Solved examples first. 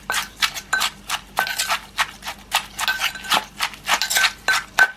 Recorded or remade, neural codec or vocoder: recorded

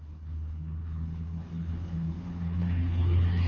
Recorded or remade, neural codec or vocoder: remade, codec, HILCodec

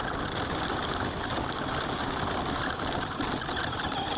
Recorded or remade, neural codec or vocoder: recorded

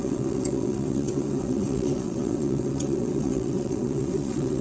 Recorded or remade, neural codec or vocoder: remade, vocoder, WaveNeXt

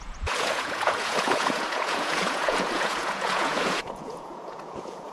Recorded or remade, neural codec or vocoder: remade, vocoder, Vocos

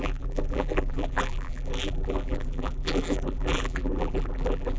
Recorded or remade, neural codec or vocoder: remade, vocoder, BigVGAN v2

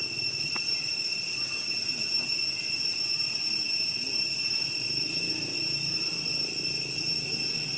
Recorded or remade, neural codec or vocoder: recorded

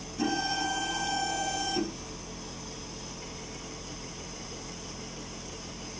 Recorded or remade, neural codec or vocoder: recorded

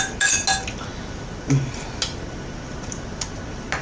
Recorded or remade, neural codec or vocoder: recorded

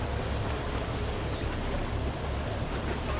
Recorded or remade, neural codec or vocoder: recorded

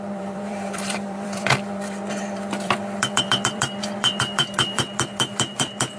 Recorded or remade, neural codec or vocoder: remade, vocoder, BigVGAN v2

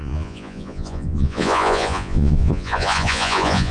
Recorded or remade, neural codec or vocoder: remade, vocoder, Vocos